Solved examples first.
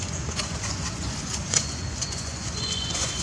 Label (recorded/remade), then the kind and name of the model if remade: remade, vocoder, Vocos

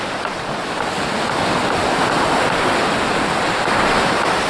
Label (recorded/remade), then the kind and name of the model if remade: recorded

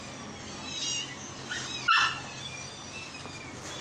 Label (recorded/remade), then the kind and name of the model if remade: recorded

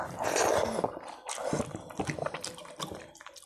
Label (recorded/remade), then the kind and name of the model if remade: recorded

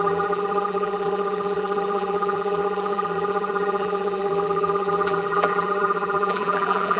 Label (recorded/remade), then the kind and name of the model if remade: remade, vocoder, BigVGAN v2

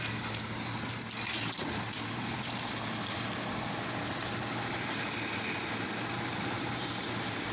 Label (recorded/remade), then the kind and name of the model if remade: recorded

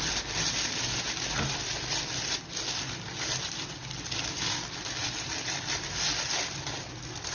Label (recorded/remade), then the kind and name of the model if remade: recorded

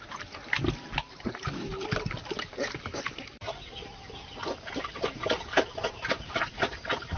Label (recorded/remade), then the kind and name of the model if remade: recorded